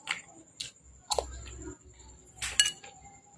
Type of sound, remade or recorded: recorded